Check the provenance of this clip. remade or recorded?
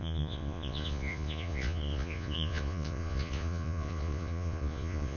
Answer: remade